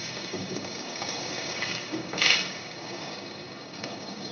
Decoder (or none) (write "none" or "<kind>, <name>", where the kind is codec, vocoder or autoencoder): codec, DAC